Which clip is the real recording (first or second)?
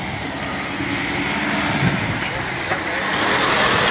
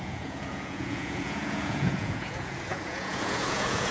first